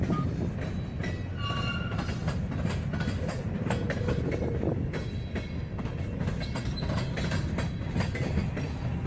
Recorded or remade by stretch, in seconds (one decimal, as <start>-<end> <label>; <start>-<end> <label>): 0.0-9.1 recorded